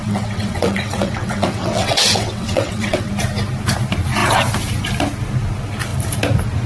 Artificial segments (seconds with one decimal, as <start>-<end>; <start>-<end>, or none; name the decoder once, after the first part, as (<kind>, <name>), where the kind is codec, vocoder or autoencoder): 0.0-3.1 (vocoder, WaveNeXt)